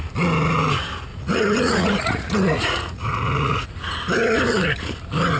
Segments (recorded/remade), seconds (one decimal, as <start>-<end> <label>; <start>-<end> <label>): 0.0-1.1 recorded; 1.1-3.7 remade; 3.7-5.4 recorded

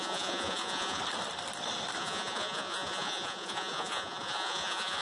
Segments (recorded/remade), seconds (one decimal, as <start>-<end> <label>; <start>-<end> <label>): 0.0-1.0 remade; 1.0-2.0 recorded; 2.0-5.0 remade